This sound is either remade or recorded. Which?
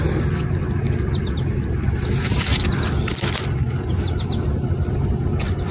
recorded